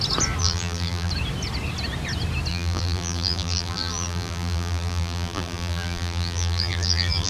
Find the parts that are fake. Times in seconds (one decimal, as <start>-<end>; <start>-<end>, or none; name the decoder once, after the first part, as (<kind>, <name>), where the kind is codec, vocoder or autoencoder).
0.4-1.1 (vocoder, BigVGAN v2); 2.5-7.3